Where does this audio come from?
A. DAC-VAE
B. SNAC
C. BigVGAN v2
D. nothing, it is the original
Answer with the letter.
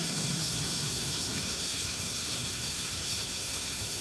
B